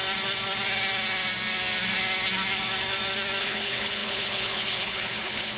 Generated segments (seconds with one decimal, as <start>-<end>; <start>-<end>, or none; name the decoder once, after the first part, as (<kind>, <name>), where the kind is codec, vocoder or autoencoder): 3.4-5.6 (codec, HILCodec)